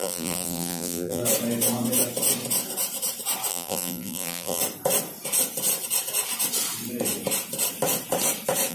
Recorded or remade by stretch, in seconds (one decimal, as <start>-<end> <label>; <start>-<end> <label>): 0.0-1.2 remade; 1.2-3.5 recorded; 3.5-4.6 remade; 4.6-8.7 recorded